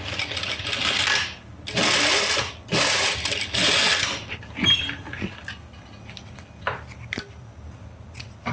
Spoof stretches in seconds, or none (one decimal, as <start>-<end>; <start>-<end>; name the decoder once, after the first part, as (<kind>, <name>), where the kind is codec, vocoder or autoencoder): none

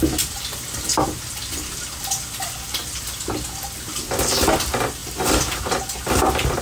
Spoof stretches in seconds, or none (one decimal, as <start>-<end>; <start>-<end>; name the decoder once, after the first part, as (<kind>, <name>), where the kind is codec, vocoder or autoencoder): none